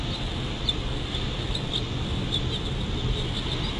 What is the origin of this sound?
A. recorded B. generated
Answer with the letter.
A